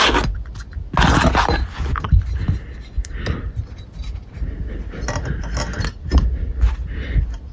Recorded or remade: recorded